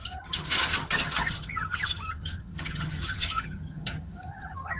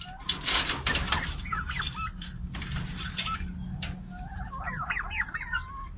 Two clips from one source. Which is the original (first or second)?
second